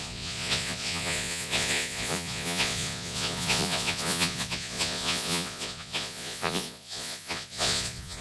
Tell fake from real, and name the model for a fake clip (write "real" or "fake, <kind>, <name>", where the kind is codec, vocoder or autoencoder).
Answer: fake, vocoder, Vocos